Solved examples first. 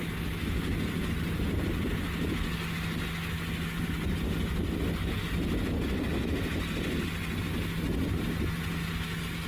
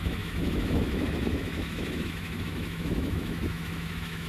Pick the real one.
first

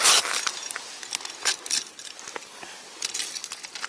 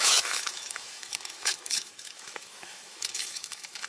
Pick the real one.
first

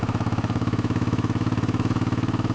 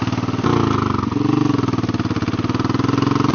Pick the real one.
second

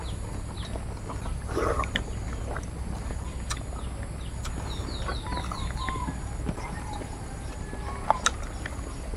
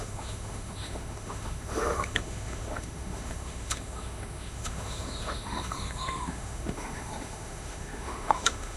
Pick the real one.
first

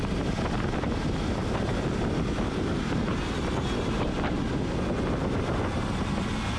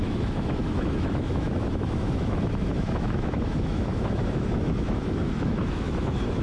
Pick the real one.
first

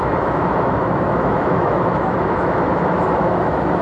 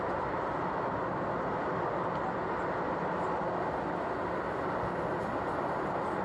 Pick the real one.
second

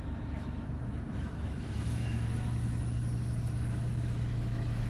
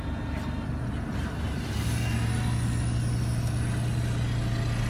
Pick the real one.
second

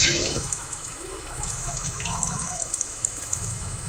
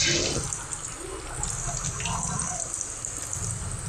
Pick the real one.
second